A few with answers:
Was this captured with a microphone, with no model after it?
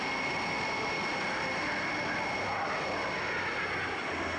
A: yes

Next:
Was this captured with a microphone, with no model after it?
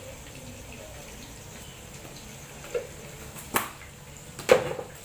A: yes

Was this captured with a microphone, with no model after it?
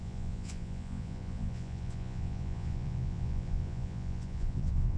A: no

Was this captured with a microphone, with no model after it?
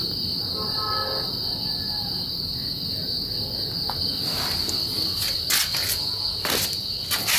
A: yes